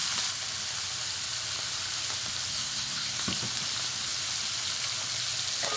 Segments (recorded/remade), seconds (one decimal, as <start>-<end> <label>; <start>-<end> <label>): 0.0-2.5 recorded; 2.5-3.3 remade; 3.3-5.8 recorded